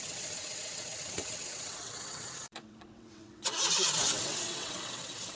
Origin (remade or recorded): remade